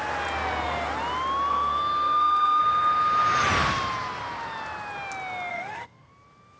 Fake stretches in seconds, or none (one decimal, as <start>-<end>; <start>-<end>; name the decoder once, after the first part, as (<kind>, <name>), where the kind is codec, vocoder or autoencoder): 1.5-2.6 (codec, SNAC); 5.5-6.1